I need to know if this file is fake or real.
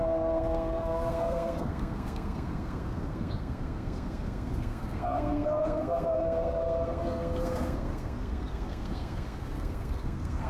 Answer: fake